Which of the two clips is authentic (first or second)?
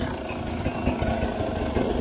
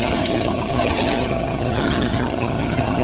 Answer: first